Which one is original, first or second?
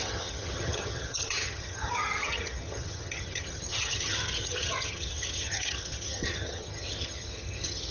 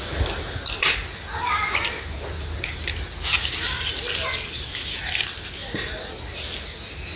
second